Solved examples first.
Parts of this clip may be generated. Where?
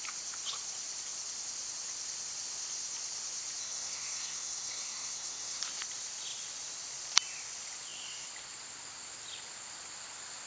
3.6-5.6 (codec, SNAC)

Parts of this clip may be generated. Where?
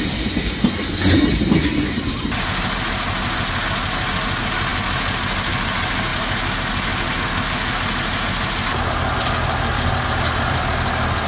none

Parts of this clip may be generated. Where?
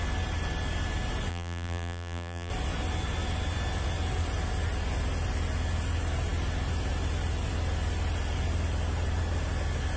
1.3-2.5 (vocoder, BigVGAN v2)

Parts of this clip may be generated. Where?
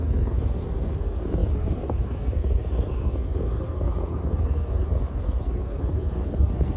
0.0-6.8 (codec, SNAC)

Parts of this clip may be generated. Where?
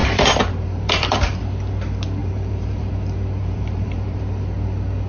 0.0-1.4 (vocoder, BigVGAN v2); 2.2-2.9; 3.4-4.2